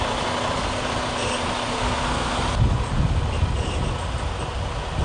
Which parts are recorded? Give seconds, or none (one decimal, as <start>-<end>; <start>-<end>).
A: 0.0-1.7; 2.4-5.0

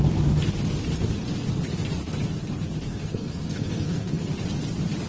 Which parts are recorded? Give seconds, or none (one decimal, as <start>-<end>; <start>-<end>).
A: 0.0-2.9; 4.3-5.1

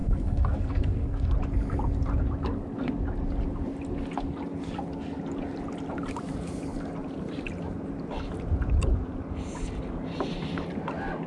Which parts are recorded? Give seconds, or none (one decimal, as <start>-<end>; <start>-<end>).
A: 1.3-11.3

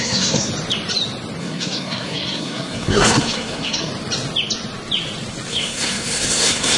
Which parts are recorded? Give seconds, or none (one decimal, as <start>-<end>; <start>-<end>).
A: 0.5-1.4; 3.9-5.5

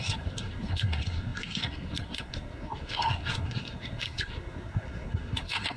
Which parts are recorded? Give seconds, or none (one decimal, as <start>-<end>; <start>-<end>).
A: none